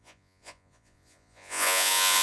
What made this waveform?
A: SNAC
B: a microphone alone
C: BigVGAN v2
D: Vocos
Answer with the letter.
D